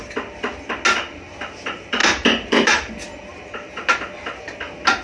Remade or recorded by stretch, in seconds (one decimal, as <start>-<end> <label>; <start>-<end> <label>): 0.0-2.0 recorded; 2.0-2.9 remade; 2.9-3.3 recorded; 3.3-3.8 remade; 3.8-5.0 recorded